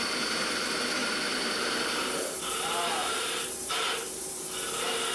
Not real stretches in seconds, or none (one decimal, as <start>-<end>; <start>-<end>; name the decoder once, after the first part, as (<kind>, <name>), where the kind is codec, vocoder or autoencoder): 1.0-1.8 (vocoder, BigVGAN v2); 3.0-4.3